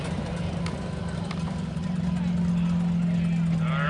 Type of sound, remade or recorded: recorded